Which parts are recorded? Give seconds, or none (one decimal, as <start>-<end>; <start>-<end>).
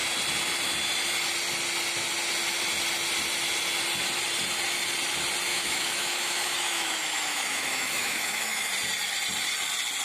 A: 0.0-5.5; 8.7-10.0